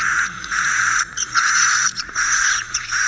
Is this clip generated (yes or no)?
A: yes